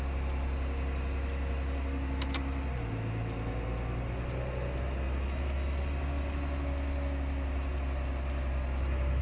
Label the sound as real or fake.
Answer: real